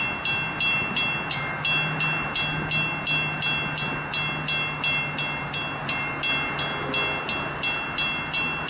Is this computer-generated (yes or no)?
no